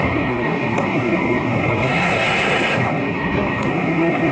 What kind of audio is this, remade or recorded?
remade